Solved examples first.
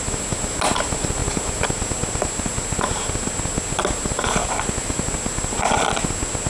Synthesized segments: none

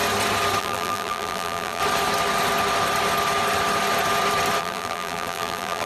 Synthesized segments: 0.6-1.8 (vocoder, BigVGAN v2); 4.6-5.9

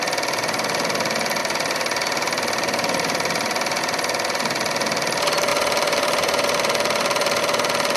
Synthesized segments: 1.4-3.8 (vocoder, BigVGAN v2); 5.5-7.4

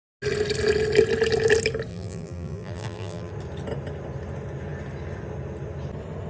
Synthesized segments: 1.9-3.3 (vocoder, BigVGAN v2)

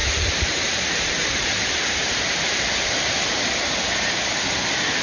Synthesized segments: 0.0-3.0 (vocoder, BigVGAN v2)

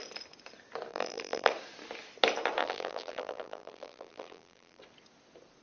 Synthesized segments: 0.9-1.5 (vocoder, BigVGAN v2); 2.6-4.8